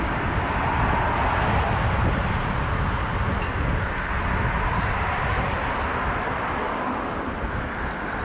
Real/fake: real